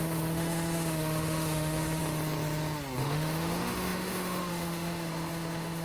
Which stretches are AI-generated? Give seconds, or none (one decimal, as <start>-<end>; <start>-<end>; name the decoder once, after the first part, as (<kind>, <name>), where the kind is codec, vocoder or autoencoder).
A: 0.0-2.0 (autoencoder, DAC-VAE); 3.0-5.8